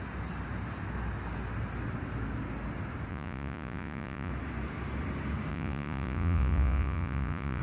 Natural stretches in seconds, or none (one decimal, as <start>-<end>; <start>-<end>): 0.0-3.1; 4.3-5.5